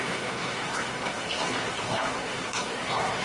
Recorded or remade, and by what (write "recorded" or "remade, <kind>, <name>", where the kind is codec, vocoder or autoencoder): remade, codec, SNAC